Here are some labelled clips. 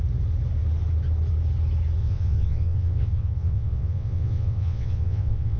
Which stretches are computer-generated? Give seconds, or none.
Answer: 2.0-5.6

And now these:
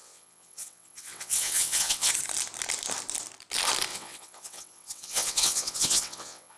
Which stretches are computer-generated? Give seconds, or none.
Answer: 0.0-2.1; 3.9-6.6

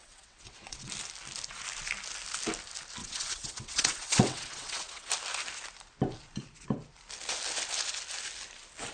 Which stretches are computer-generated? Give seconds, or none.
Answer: 0.0-0.9; 3.0-5.1